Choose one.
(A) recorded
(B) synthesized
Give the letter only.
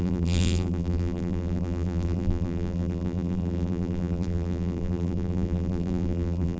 B